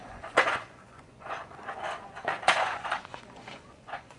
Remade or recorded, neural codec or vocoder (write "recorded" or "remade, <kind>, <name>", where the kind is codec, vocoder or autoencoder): remade, vocoder, Vocos